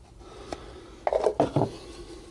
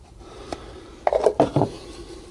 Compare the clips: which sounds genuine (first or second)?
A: first